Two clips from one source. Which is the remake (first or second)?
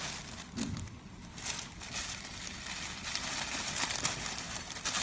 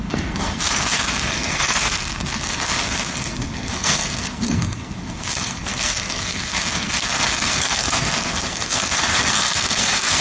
second